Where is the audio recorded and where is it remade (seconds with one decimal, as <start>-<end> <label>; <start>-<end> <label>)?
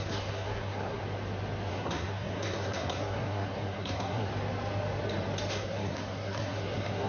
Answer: 0.0-1.0 remade; 1.0-1.7 recorded; 1.7-4.3 remade; 4.3-5.5 recorded; 5.5-7.1 remade